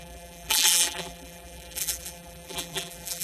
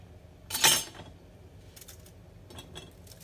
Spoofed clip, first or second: first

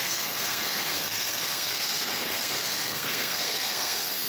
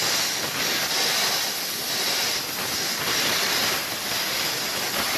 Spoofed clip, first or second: first